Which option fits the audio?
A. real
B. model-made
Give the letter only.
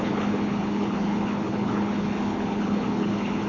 B